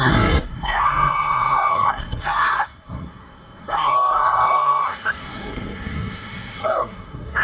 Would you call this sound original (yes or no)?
no